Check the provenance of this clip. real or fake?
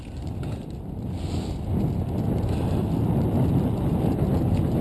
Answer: real